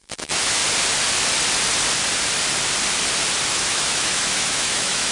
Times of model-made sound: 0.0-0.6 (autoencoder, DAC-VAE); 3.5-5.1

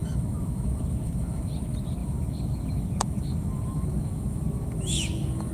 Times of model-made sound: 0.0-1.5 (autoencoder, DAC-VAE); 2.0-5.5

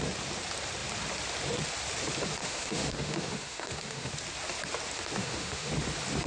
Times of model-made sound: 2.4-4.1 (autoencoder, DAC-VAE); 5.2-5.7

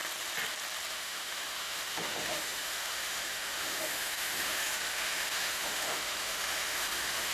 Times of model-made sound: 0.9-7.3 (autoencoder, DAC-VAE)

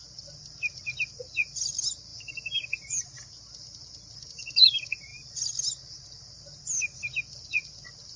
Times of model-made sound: none

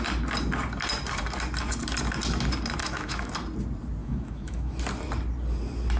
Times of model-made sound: 2.8-3.3 (autoencoder, DAC-VAE); 4.0-4.8

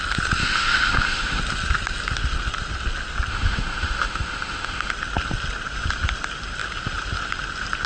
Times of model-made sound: 0.4-1.4 (autoencoder, DAC-VAE); 3.3-4.9

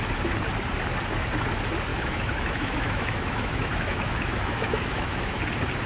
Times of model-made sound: 1.9-5.4 (autoencoder, DAC-VAE)